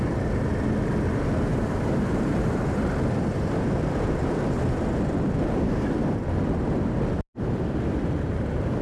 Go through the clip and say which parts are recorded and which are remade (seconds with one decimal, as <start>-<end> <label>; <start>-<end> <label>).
0.0-1.5 recorded; 1.5-4.6 remade; 4.6-8.8 recorded